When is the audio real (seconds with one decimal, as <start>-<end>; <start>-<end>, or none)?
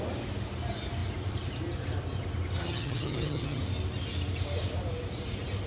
0.0-2.6; 3.6-5.7